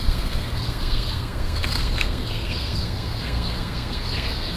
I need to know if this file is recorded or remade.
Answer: remade